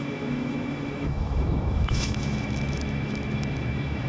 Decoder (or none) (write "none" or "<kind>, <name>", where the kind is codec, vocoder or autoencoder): autoencoder, DAC-VAE